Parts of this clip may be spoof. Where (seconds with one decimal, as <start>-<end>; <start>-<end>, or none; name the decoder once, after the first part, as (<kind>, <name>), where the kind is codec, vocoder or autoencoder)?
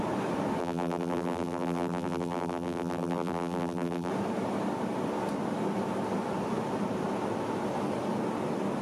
0.6-4.1 (vocoder, BigVGAN v2)